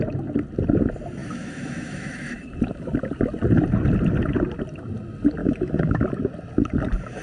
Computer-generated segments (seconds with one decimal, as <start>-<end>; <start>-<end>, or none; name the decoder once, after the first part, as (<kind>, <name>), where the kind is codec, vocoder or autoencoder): 1.2-2.4 (autoencoder, DAC-VAE); 5.4-6.0